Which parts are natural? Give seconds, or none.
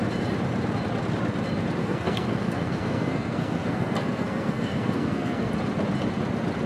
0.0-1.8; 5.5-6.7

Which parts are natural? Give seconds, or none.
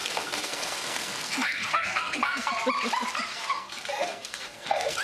2.5-3.3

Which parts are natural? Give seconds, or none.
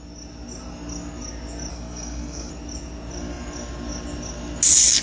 0.0-1.7; 2.5-5.0